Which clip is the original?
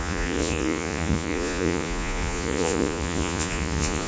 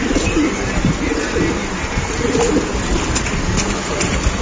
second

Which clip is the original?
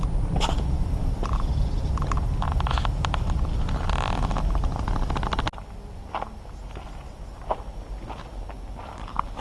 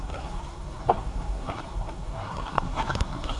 first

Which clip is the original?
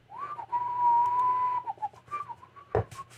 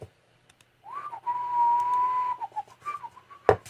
second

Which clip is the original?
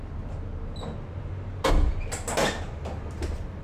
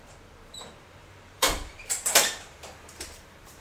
first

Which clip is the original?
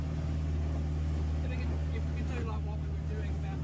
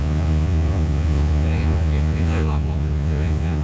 first